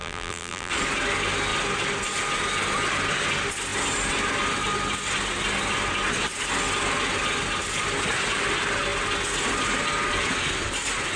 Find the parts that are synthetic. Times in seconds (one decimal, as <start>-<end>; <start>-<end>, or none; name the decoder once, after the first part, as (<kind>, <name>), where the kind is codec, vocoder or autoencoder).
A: 0.0-0.7 (vocoder, BigVGAN v2)